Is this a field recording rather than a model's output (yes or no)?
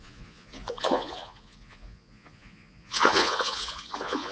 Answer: no